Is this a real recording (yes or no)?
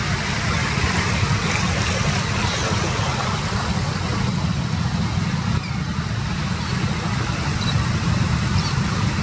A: yes